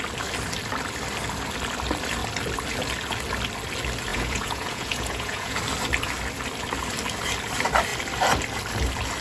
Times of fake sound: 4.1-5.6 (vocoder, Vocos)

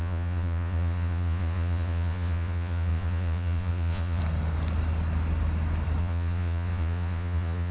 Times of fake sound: 0.0-4.2 (vocoder, Vocos); 6.0-7.7